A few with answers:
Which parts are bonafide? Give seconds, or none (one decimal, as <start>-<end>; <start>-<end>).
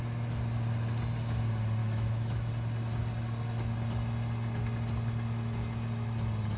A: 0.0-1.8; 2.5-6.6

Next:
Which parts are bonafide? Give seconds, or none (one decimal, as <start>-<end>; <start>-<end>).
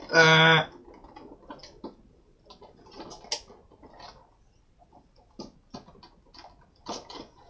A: 0.0-7.5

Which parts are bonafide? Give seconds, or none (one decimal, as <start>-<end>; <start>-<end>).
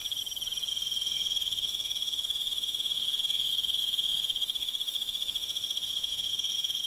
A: 0.0-0.7